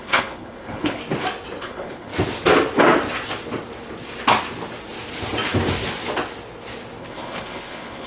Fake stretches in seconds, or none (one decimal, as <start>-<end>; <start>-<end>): 0.0-1.0; 1.6-2.1; 7.0-8.1